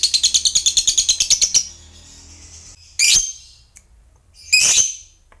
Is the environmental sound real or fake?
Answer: real